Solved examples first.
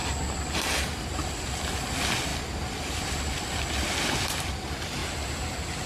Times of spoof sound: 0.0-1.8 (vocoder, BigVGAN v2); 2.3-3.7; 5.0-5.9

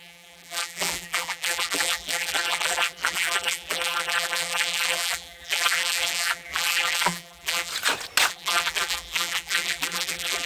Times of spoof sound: 0.0-7.7 (vocoder, BigVGAN v2); 8.3-10.5

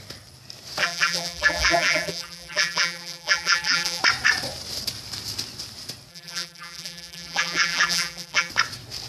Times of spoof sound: 0.8-4.0 (vocoder, BigVGAN v2); 6.1-8.5

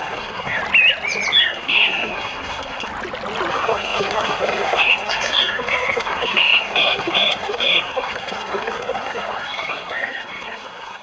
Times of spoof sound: 0.0-0.6 (codec, SNAC); 1.4-2.9; 3.5-11.0

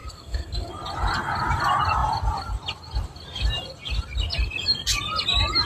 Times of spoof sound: 0.0-0.7 (codec, SNAC)